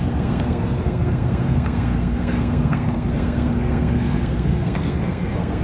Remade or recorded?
remade